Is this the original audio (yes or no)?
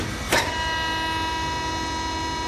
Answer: yes